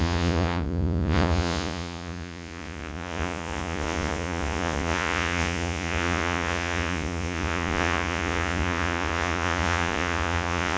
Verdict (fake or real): fake